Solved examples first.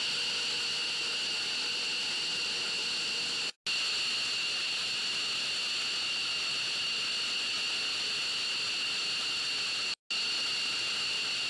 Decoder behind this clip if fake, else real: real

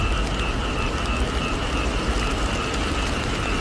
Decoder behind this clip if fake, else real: real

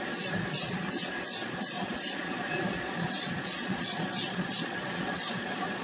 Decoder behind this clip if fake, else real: fake, vocoder, Vocos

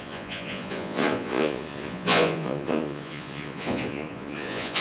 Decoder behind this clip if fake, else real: fake, vocoder, Vocos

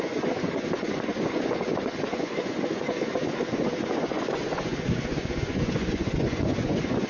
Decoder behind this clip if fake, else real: fake, vocoder, Vocos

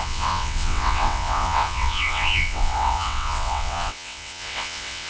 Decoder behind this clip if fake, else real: fake, vocoder, WaveNeXt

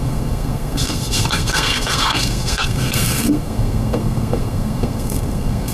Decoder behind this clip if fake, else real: fake, codec, SNAC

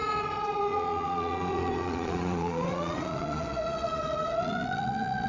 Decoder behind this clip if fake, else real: fake, vocoder, Vocos